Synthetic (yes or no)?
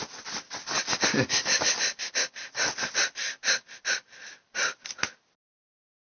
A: no